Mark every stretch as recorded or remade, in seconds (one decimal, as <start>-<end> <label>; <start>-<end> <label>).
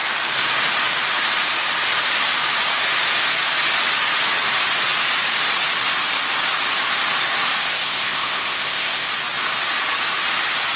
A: 0.0-7.6 recorded; 7.6-9.1 remade; 9.1-10.8 recorded